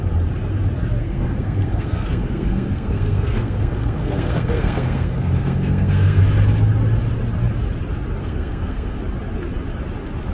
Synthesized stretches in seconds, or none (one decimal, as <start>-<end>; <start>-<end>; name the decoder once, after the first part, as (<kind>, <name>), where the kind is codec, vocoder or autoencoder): 1.0-6.2 (codec, SNAC); 8.2-9.0